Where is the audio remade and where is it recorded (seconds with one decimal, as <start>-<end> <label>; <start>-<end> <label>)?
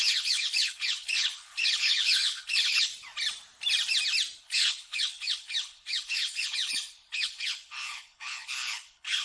0.0-2.9 remade; 2.9-4.4 recorded; 4.4-9.2 remade